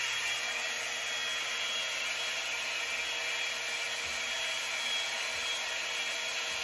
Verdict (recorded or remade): recorded